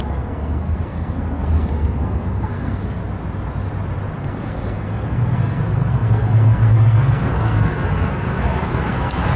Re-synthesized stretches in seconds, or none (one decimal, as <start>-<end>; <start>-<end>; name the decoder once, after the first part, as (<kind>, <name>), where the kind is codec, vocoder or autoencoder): 0.0-3.0 (codec, SNAC); 4.2-9.4